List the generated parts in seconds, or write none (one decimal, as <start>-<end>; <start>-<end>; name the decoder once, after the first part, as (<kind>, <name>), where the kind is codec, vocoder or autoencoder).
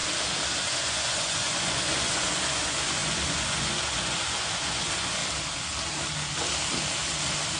0.6-5.2 (vocoder, Vocos)